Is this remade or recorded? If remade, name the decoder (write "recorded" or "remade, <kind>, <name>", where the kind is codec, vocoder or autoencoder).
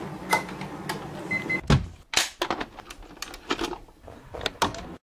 recorded